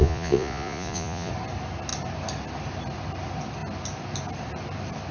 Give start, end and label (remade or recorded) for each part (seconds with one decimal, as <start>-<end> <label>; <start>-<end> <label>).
0.0-1.3 remade; 1.3-5.1 recorded